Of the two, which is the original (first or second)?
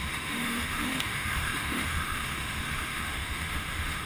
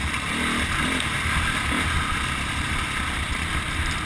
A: second